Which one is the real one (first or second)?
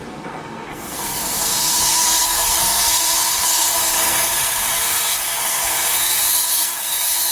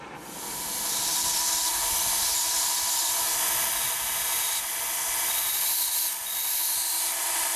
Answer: second